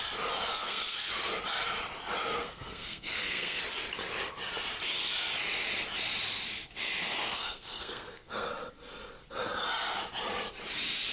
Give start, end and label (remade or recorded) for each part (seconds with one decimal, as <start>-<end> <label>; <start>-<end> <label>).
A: 0.0-0.5 recorded; 0.5-1.1 remade; 1.1-2.3 recorded; 2.3-3.6 remade; 3.6-7.2 recorded; 7.2-8.5 remade; 8.5-11.1 recorded